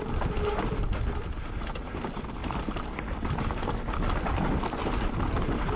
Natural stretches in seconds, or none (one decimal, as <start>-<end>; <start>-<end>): 0.0-2.4; 3.0-5.8